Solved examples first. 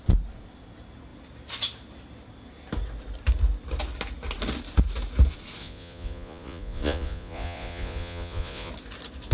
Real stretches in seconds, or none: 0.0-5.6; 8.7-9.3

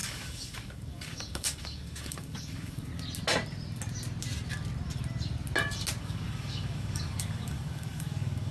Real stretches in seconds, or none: 2.9-6.0